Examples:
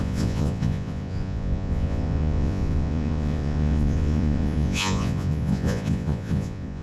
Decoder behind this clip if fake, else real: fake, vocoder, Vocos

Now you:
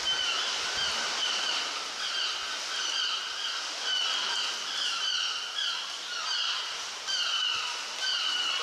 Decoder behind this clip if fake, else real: real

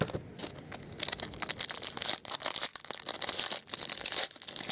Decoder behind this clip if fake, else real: real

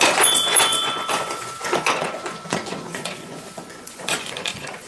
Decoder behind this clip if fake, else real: fake, vocoder, Vocos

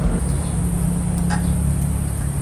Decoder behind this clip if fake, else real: real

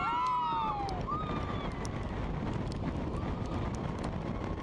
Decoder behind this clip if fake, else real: real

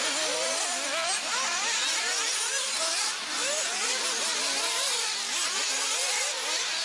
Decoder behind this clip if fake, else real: real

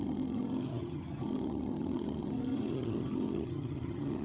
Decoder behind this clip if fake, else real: fake, vocoder, HiFi-GAN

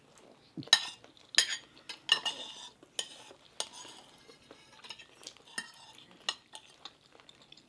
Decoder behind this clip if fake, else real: real